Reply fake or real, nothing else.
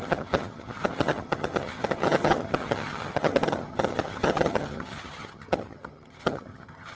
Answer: fake